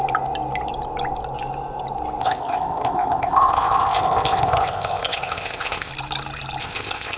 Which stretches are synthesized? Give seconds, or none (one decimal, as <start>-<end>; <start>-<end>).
2.2-5.9; 6.6-7.2